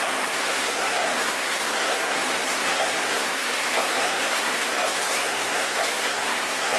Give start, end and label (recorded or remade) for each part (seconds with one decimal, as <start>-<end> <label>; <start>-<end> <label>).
0.0-6.8 remade